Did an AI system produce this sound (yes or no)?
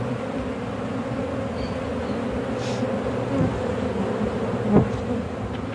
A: no